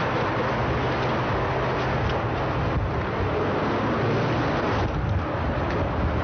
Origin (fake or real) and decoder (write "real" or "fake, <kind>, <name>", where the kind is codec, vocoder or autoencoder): real